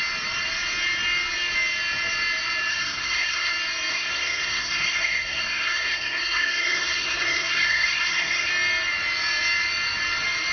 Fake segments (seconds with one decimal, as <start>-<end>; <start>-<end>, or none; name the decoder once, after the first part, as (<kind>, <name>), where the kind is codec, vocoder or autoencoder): 2.7-3.5 (codec, SNAC); 3.9-8.5